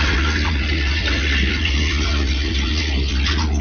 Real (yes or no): no